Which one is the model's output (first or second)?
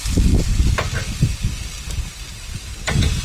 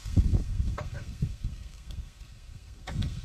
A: second